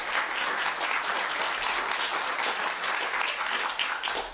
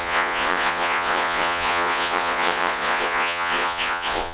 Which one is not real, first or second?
second